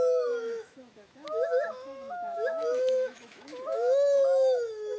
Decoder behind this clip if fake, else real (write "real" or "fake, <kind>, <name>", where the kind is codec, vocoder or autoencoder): fake, autoencoder, DAC-VAE